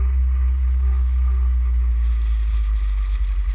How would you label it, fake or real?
real